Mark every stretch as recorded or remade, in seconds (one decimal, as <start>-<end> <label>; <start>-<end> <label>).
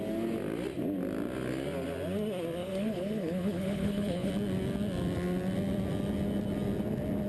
0.0-2.6 recorded; 2.6-4.3 remade; 4.3-7.3 recorded